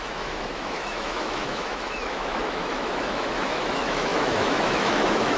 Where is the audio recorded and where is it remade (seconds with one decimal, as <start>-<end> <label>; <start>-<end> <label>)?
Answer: 0.0-5.4 remade